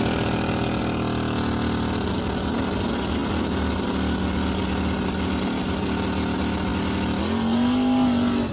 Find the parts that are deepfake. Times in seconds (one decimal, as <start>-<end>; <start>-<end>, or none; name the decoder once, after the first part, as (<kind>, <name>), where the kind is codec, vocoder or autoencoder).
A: none